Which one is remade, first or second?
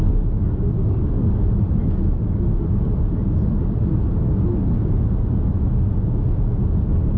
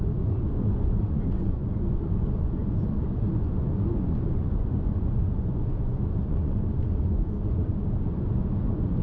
second